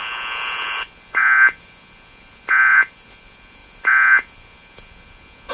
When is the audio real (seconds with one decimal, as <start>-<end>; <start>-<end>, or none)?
none